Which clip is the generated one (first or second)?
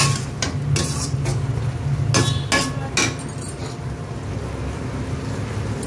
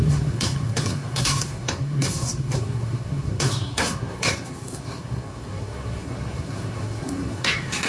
second